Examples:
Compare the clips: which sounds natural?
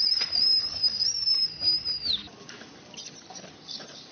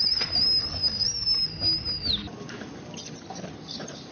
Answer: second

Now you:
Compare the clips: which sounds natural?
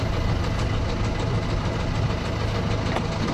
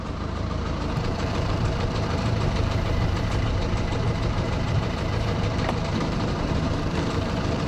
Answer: first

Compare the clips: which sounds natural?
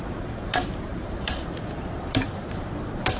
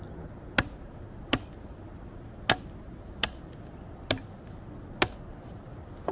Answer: second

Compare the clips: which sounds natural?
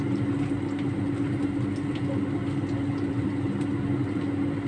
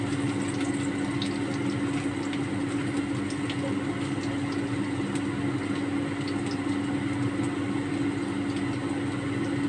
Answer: second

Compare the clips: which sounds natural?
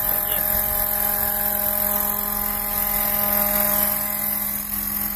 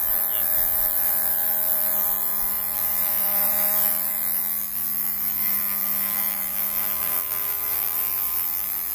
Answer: first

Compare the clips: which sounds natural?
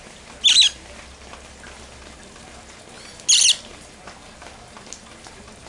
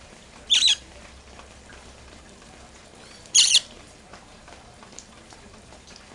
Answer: first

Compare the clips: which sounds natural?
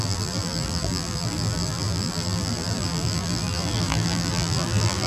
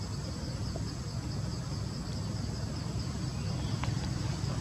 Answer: second